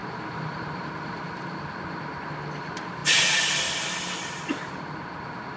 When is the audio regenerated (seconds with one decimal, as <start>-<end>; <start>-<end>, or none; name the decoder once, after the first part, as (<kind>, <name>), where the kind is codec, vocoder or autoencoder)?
0.0-1.2 (vocoder, BigVGAN v2)